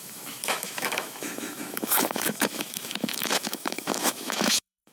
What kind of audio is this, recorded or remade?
remade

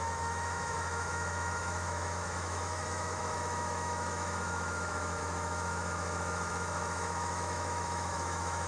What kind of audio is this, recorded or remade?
remade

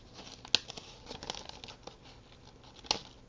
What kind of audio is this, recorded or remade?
recorded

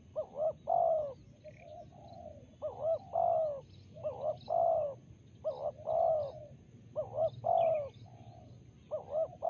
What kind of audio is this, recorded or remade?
recorded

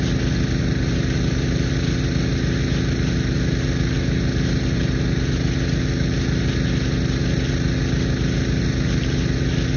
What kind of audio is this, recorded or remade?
recorded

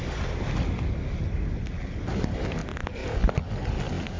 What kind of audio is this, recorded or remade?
recorded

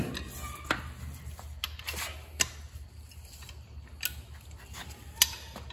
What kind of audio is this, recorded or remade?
recorded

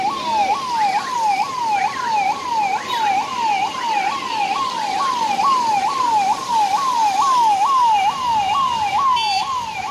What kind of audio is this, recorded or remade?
recorded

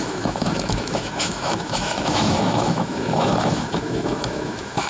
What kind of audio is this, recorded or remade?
remade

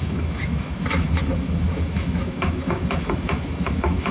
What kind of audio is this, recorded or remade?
remade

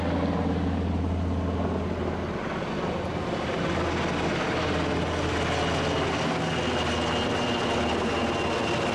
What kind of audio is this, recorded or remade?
recorded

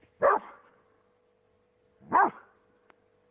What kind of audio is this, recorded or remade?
recorded